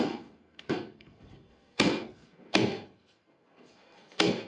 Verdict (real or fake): fake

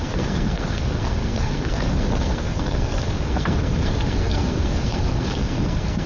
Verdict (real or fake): fake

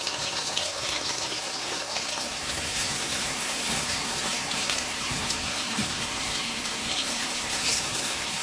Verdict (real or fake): fake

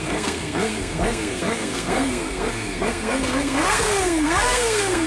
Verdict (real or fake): fake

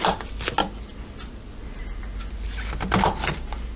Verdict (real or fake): real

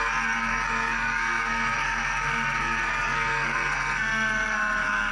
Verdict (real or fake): fake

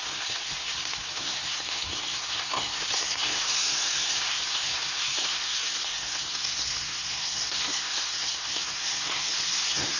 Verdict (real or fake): fake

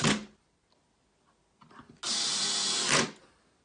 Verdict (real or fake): real